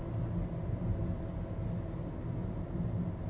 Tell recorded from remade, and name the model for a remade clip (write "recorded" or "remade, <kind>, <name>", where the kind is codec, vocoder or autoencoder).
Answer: recorded